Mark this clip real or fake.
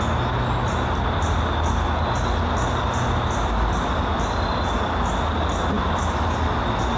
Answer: real